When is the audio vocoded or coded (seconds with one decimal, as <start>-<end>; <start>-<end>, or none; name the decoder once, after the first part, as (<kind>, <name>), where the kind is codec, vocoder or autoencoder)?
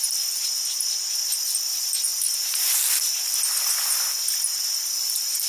none